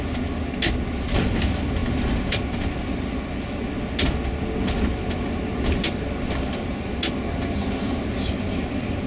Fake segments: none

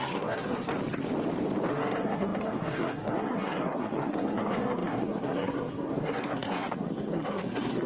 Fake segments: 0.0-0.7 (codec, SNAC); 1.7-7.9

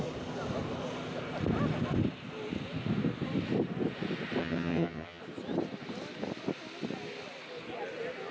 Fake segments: 4.4-5.2 (vocoder, HiFi-GAN)